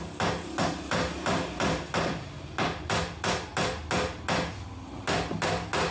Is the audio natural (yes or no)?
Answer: yes